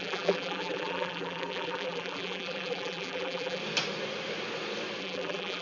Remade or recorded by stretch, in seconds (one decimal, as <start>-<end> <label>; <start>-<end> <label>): 0.0-3.6 remade; 3.6-5.0 recorded; 5.0-5.6 remade